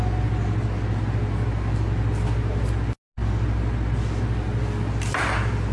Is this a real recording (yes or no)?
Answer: yes